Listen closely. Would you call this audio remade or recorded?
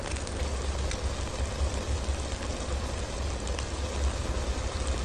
recorded